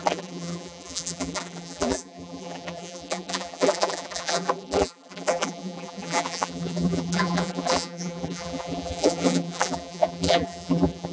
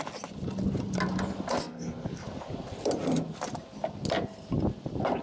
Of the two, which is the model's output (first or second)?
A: first